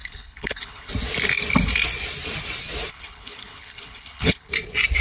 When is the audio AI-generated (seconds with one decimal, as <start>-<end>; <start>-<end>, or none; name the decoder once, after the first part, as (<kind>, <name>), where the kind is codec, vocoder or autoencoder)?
0.0-0.9 (codec, HILCodec); 2.9-4.5